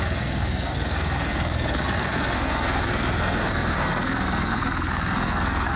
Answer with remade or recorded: remade